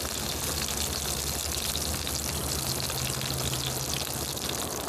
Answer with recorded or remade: recorded